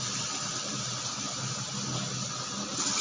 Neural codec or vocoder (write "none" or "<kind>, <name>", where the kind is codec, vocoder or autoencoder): none